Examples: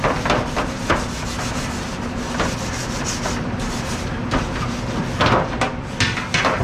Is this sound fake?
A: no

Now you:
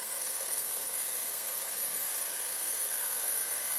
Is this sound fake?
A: yes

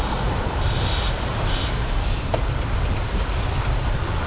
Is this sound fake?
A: yes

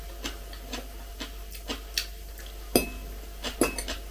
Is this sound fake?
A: no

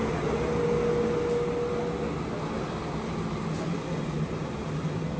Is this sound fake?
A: no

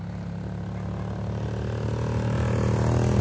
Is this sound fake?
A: no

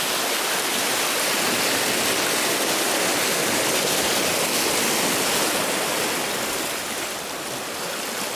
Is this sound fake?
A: no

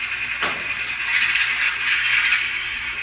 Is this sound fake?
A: no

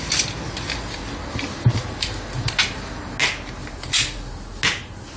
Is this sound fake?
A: no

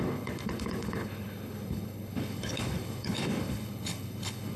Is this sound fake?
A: yes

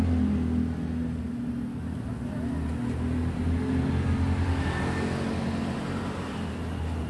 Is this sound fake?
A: no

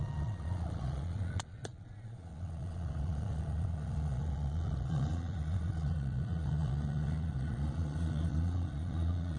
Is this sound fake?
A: yes